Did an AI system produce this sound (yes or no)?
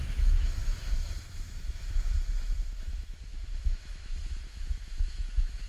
yes